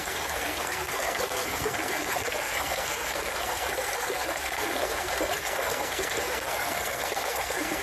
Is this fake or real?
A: fake